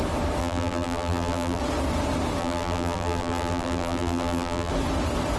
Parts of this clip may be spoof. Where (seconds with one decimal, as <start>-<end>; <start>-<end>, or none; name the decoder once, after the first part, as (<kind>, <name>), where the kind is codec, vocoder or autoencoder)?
0.4-1.6 (vocoder, BigVGAN v2); 2.4-4.7